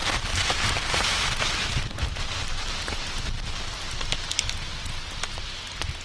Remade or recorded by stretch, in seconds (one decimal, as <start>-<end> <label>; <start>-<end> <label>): 0.0-3.6 remade; 3.6-6.0 recorded